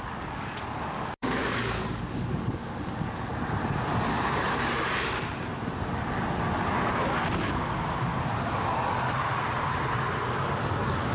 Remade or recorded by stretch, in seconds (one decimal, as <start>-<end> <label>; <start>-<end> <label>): 0.0-3.3 remade; 3.3-7.1 recorded; 7.1-8.1 remade; 8.1-10.3 recorded; 10.3-11.1 remade